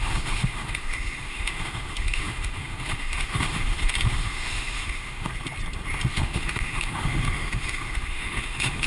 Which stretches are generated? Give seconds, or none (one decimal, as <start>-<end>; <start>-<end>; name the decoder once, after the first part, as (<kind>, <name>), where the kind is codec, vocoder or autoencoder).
0.0-5.3 (autoencoder, DAC-VAE); 6.1-8.9